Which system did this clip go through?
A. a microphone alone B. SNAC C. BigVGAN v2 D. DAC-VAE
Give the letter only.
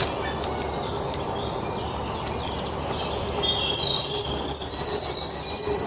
A